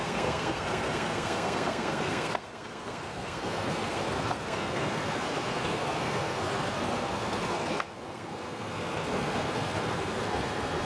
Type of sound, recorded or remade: remade